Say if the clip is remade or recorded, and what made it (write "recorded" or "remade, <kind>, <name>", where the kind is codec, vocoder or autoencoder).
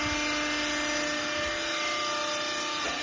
recorded